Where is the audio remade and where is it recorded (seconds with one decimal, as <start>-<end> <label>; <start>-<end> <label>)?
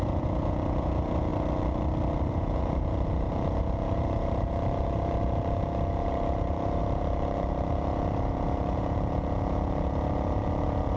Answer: 0.0-1.3 remade; 1.3-2.3 recorded; 2.3-11.0 remade